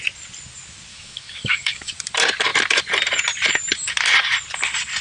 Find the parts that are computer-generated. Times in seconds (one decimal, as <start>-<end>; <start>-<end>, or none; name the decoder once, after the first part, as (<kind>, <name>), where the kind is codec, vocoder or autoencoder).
0.9-1.9 (autoencoder, DAC-VAE)